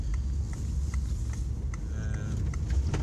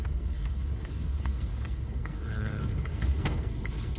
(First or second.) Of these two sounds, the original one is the first